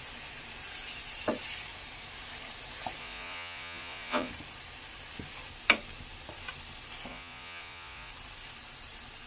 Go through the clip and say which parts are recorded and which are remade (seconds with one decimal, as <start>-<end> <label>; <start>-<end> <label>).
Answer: 0.0-3.0 recorded; 3.0-4.3 remade; 4.3-7.1 recorded; 7.1-8.1 remade; 8.1-9.3 recorded